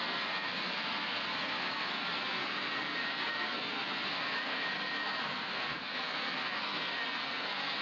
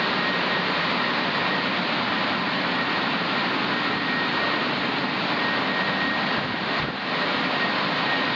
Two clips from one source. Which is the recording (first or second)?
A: second